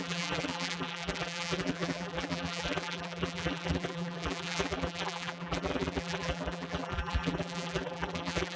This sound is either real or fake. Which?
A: fake